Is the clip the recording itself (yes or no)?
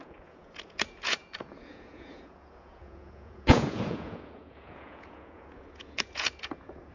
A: no